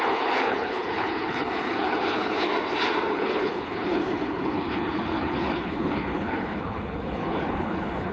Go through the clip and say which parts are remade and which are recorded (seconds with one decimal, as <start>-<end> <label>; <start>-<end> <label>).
0.0-2.5 remade; 2.5-3.1 recorded; 3.1-8.1 remade